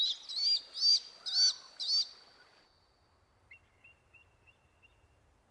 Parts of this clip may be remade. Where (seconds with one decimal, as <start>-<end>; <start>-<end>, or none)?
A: none